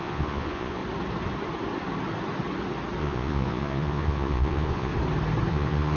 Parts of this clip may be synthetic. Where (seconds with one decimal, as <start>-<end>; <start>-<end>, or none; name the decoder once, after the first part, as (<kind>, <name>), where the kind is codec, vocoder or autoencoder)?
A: 0.0-0.8 (vocoder, Vocos); 3.0-4.9; 5.5-6.0